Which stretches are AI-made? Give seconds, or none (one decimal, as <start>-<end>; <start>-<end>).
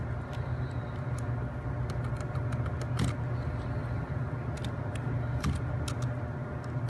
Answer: none